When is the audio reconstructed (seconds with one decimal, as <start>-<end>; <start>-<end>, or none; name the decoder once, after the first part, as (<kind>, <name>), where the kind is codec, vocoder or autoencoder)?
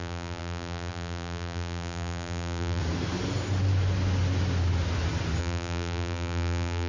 0.0-2.8 (vocoder, BigVGAN v2); 5.4-6.9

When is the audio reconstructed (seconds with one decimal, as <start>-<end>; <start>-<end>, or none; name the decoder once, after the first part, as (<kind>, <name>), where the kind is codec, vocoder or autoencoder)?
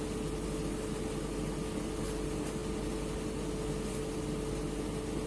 none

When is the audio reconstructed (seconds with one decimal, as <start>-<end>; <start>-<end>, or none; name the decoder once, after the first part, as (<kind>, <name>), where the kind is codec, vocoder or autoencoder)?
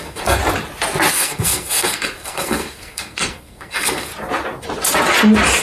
0.0-0.4 (codec, SNAC); 1.1-4.1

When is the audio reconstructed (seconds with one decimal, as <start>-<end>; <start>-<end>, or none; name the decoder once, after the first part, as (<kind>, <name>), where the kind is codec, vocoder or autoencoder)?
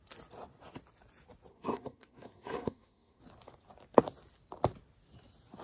1.5-3.2 (codec, SNAC)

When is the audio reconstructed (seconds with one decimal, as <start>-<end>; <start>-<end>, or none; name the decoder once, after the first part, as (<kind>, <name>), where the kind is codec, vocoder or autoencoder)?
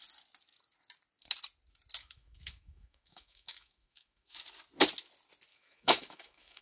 2.0-4.4 (autoencoder, DAC-VAE); 5.5-6.6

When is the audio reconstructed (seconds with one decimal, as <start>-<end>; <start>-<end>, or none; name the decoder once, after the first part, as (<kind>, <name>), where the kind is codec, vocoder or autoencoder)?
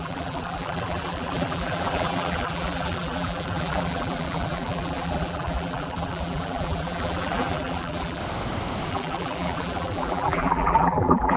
0.0-8.2 (vocoder, BigVGAN v2); 8.9-11.4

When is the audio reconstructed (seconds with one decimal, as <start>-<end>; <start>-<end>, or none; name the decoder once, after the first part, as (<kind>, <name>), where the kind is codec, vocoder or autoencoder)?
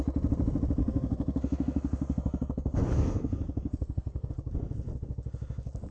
0.8-4.3 (codec, SNAC)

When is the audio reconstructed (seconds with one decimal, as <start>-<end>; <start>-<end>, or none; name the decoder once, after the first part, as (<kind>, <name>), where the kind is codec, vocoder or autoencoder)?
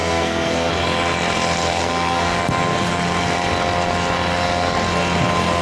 0.0-0.7 (codec, SNAC); 1.7-2.4